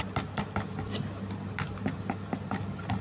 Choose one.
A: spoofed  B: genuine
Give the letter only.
B